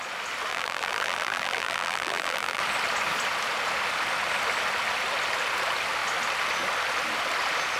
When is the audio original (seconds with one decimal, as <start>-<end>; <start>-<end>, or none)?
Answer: 0.0-0.5; 2.6-7.8